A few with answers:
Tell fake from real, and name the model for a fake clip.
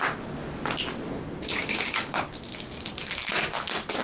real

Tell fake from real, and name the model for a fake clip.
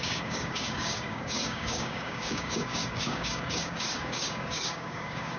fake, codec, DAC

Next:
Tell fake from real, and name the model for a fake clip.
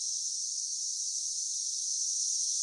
fake, vocoder, Vocos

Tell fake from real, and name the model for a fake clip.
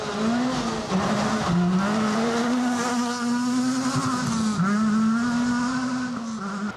real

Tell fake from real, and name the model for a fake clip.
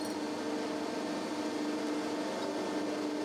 real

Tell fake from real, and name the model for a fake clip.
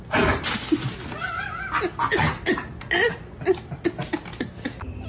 real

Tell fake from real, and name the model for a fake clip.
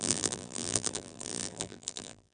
fake, vocoder, BigVGAN v2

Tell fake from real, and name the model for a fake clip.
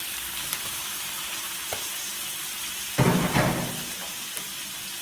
real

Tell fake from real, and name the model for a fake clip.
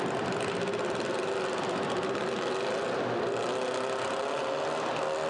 real